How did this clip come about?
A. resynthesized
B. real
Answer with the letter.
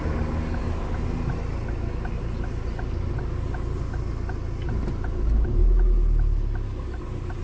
B